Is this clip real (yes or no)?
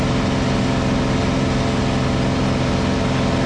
yes